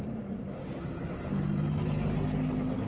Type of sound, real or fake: real